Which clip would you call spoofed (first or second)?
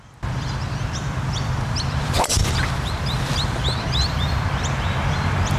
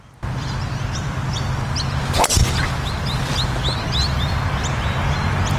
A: first